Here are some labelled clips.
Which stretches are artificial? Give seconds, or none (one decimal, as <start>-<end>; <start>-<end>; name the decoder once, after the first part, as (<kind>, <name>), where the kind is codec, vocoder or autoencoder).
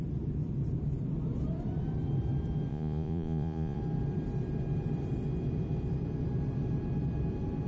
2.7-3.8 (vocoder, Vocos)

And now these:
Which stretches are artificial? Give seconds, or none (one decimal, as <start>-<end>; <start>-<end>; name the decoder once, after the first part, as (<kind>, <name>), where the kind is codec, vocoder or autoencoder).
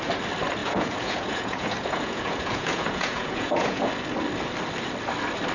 0.6-3.9 (vocoder, Vocos)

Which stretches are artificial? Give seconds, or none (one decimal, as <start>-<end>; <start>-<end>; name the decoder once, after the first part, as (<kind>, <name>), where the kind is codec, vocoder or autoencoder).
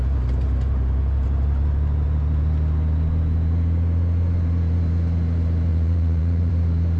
5.7-6.5 (vocoder, Vocos)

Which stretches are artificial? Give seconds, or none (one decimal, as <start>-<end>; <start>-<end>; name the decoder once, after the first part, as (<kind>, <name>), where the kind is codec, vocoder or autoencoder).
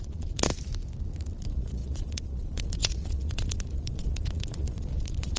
0.0-0.5 (vocoder, Vocos); 1.4-5.4